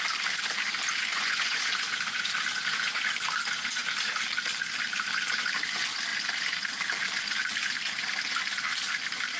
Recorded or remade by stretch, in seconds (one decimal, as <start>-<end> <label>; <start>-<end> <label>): 0.0-1.1 recorded; 1.1-1.6 remade; 1.6-9.4 recorded